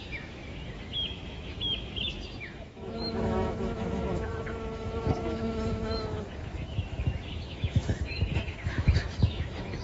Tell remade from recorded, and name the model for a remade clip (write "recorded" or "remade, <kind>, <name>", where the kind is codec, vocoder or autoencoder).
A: remade, autoencoder, DAC-VAE